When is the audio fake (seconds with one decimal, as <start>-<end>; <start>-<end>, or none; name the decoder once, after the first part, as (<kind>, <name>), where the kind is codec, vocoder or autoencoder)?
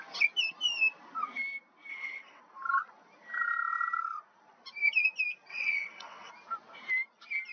1.9-2.4 (vocoder, WaveNeXt); 5.5-6.3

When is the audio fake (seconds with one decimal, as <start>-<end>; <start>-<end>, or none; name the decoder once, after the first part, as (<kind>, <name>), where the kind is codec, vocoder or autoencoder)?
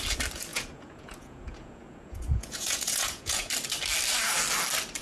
0.5-3.5 (vocoder, Vocos)